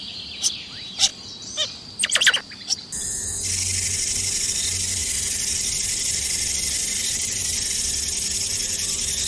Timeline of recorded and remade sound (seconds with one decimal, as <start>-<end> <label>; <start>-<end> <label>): 0.0-9.3 recorded